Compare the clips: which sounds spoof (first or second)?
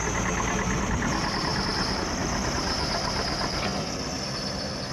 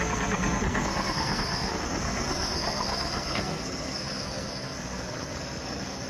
second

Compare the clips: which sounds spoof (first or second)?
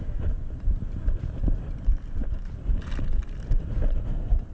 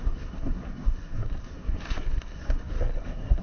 second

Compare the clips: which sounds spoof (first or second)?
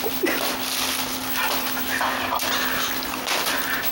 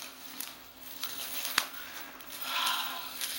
second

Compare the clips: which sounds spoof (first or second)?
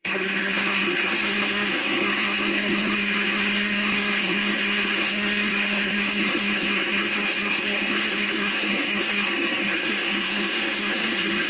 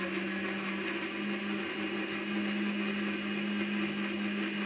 first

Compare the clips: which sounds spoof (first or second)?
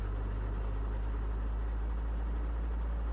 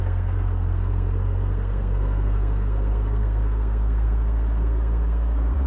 second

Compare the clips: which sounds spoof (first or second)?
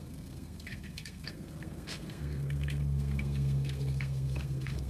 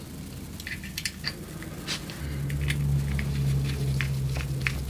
first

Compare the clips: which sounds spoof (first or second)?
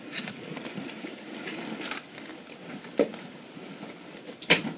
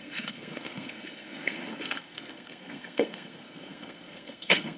second